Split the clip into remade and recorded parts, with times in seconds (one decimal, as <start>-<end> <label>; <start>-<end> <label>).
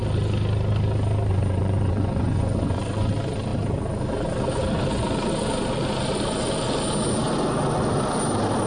0.0-1.3 recorded; 1.3-3.1 remade; 3.1-8.7 recorded